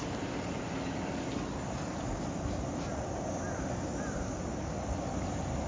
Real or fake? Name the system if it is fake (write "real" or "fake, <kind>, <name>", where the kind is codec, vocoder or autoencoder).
real